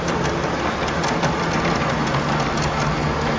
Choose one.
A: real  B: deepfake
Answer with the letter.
A